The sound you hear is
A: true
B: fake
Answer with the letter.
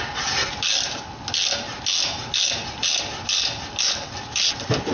A